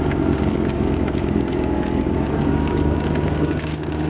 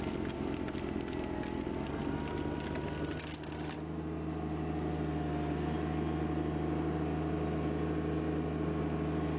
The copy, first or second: first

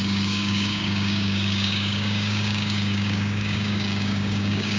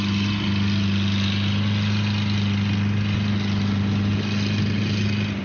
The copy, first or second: first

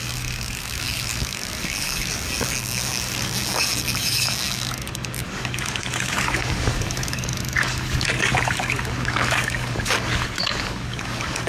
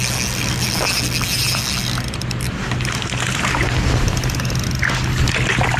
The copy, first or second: first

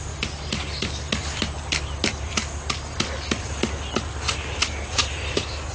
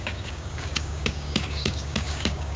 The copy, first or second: second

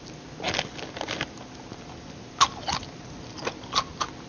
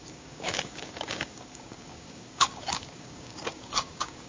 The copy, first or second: second